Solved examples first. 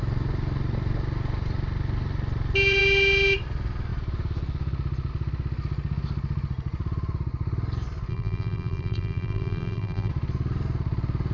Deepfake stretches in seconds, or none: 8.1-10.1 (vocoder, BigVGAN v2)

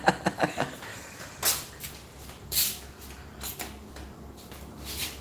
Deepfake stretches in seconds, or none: 0.9-1.8 (vocoder, BigVGAN v2)

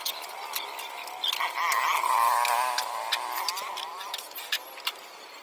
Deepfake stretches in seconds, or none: none

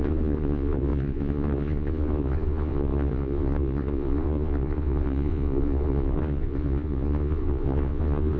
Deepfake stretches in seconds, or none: 0.0-8.4 (vocoder, Vocos)

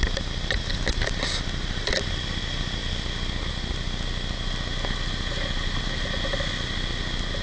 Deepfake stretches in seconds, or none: none

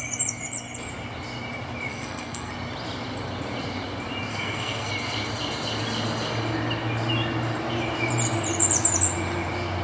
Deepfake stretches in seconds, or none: 1.9-2.5 (codec, SNAC); 4.3-4.9

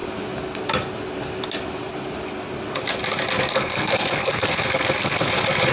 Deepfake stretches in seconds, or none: 3.5-5.3 (codec, SNAC)